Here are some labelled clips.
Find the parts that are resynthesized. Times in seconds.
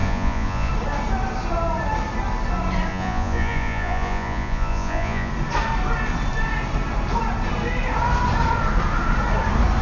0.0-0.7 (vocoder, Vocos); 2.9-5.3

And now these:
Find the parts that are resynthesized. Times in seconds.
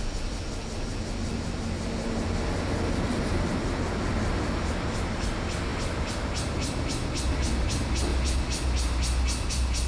none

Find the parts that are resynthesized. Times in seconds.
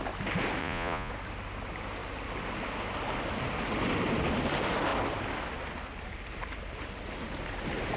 0.6-1.1 (vocoder, Vocos)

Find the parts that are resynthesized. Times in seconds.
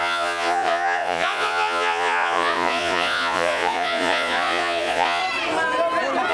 0.0-5.2 (vocoder, Vocos)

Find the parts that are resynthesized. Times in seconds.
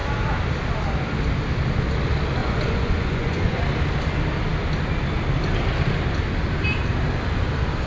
2.4-3.6 (vocoder, Vocos)